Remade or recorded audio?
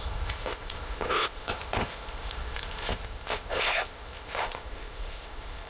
remade